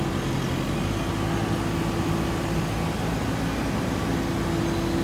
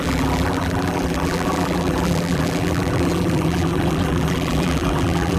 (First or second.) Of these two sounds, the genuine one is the first